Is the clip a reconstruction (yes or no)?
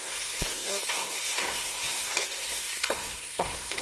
yes